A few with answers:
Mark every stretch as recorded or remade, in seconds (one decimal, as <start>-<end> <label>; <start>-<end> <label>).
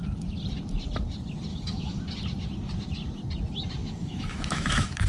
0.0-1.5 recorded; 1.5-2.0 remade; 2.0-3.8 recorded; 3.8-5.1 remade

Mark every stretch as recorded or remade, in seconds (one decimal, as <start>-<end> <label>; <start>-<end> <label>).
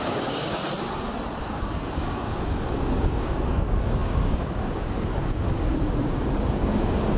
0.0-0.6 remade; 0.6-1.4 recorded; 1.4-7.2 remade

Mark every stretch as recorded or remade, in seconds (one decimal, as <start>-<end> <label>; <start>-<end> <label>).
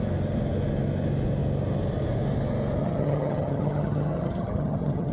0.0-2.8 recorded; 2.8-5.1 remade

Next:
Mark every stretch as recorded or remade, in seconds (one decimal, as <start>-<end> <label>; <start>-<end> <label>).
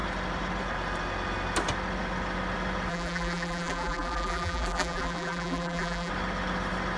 0.0-2.9 recorded; 2.9-6.1 remade; 6.1-7.0 recorded